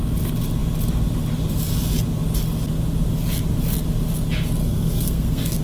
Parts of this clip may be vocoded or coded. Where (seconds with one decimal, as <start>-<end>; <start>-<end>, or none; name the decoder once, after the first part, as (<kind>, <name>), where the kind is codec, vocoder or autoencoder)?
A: 4.6-5.6 (codec, SNAC)